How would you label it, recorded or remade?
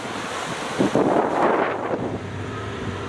remade